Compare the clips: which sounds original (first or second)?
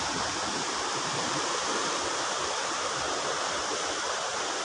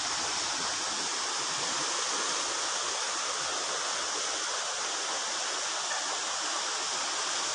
second